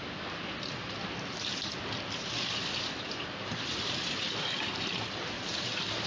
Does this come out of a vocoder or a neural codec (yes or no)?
yes